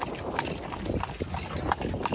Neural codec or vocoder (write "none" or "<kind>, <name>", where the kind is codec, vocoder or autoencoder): none